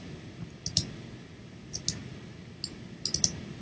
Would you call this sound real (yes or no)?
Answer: yes